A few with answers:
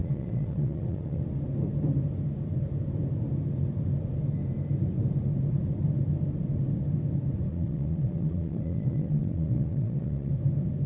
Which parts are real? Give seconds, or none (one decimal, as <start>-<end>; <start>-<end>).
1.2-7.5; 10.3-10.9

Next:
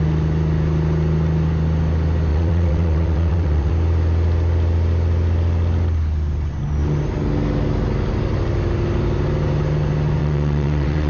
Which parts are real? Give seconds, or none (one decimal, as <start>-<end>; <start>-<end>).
0.0-2.3; 3.7-10.2

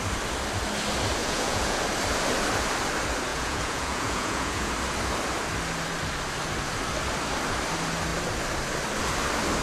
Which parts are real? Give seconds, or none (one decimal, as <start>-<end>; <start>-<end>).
0.0-1.2; 1.8-3.3; 4.7-9.6